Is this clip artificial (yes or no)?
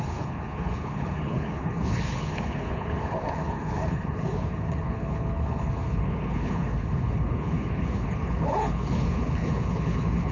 yes